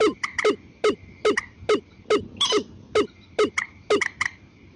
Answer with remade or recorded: recorded